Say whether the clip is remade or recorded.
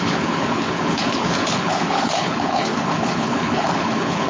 remade